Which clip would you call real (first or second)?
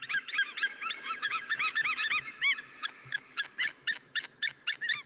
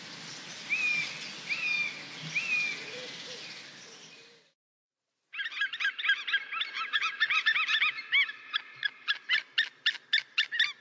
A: second